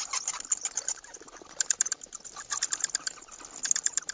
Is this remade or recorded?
recorded